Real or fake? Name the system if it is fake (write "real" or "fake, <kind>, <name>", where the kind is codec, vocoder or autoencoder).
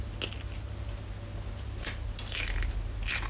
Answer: real